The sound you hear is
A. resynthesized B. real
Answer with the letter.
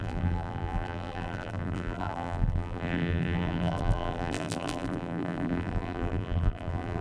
A